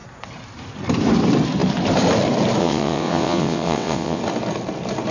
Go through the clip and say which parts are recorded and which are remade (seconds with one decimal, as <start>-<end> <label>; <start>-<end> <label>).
0.0-2.6 recorded; 2.6-4.2 remade; 4.2-5.1 recorded